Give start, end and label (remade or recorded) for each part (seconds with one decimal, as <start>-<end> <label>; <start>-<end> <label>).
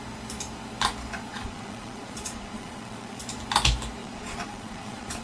0.0-1.3 recorded; 1.3-3.2 remade; 3.2-4.0 recorded; 4.0-5.2 remade